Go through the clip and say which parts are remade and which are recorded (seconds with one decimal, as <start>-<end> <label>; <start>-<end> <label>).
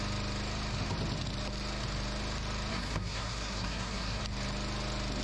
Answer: 0.0-2.7 recorded; 2.7-4.2 remade; 4.2-5.2 recorded